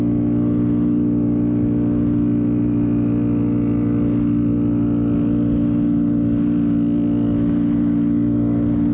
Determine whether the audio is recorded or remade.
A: recorded